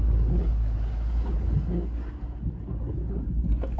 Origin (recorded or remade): recorded